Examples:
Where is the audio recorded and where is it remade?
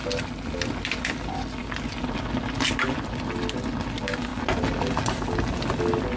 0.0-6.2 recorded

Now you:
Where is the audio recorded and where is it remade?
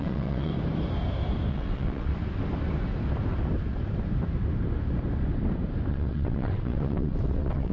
0.0-0.5 remade; 0.5-1.5 recorded; 1.5-2.1 remade; 2.1-5.9 recorded; 5.9-7.7 remade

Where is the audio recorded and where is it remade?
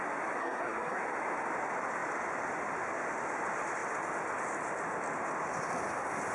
0.0-0.4 recorded; 0.4-1.0 remade; 1.0-6.3 recorded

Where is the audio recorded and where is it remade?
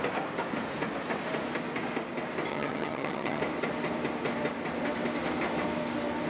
0.0-2.5 recorded; 2.5-3.4 remade; 3.4-6.3 recorded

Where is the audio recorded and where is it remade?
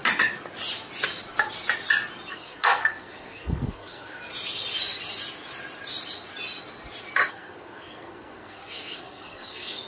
0.0-2.3 recorded; 2.3-4.3 remade; 4.3-7.3 recorded; 7.3-9.9 remade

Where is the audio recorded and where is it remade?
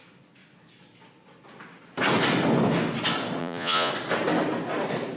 0.0-3.4 recorded; 3.4-3.9 remade; 3.9-5.2 recorded